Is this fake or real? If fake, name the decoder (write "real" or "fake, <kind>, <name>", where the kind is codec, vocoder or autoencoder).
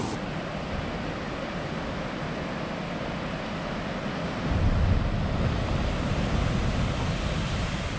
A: real